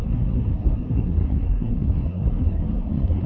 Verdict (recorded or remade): remade